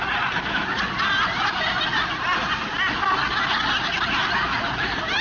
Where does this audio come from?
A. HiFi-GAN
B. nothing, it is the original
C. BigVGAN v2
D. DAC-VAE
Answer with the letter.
B